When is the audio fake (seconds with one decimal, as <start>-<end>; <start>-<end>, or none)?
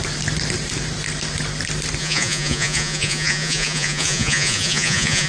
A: 2.0-5.3